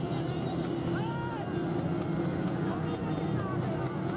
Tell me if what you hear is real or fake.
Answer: real